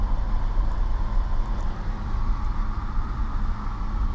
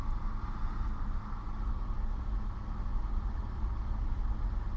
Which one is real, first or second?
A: second